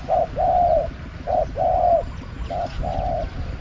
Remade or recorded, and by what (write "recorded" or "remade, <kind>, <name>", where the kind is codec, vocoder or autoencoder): recorded